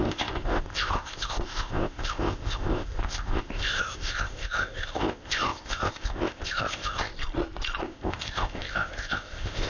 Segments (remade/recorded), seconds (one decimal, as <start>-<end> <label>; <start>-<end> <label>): 0.0-7.1 remade; 7.1-7.8 recorded; 7.8-9.7 remade